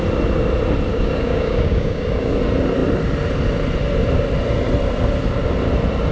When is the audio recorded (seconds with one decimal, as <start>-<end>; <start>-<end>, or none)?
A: 0.0-0.9; 2.4-6.1